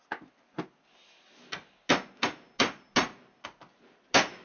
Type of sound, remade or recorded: recorded